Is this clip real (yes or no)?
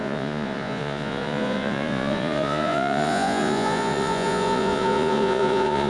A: no